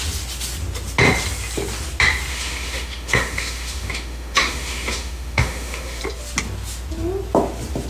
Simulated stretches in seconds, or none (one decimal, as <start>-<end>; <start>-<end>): 2.3-6.0